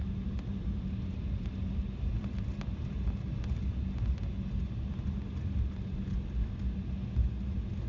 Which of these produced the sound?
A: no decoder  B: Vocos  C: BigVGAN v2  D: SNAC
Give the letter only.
A